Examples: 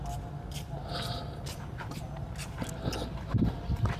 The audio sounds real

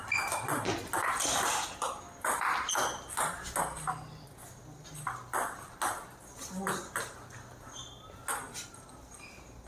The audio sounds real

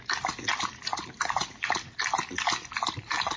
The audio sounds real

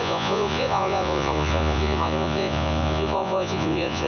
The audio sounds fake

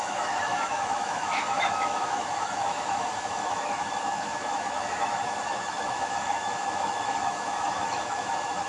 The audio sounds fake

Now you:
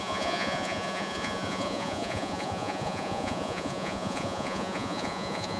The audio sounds fake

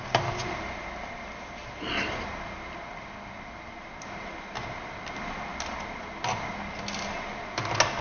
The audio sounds real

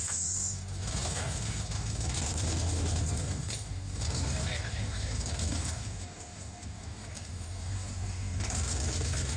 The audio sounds fake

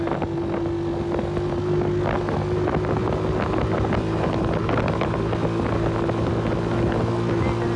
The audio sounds real